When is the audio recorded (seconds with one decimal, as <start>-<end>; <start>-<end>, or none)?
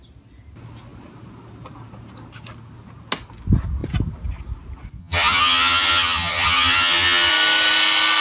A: 0.0-5.0; 7.3-8.2